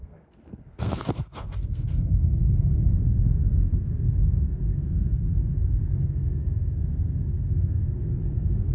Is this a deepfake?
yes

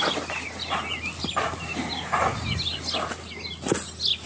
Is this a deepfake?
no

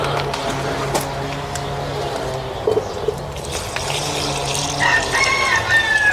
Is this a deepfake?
no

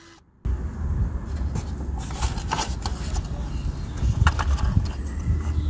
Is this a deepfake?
no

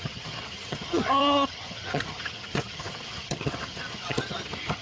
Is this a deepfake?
yes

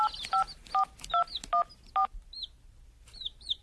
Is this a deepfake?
no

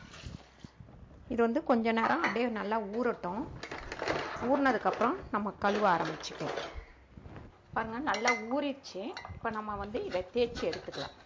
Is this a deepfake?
no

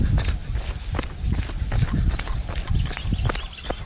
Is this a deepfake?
no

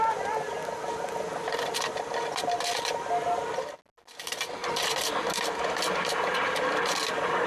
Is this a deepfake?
no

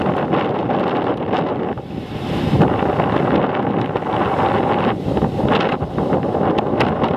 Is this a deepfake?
no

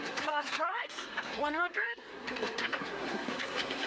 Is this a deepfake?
yes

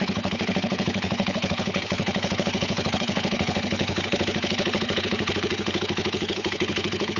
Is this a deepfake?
yes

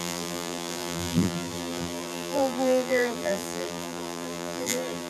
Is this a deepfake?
yes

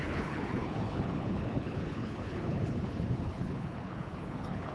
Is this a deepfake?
yes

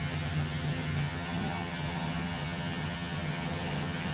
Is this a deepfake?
yes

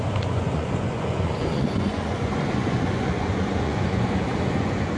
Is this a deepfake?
yes